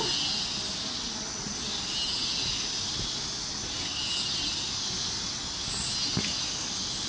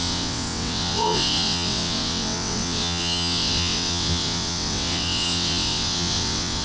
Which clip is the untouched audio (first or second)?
first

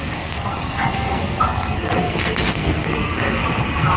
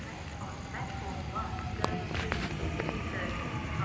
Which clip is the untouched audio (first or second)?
second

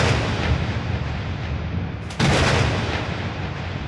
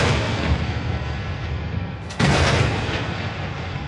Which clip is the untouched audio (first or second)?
first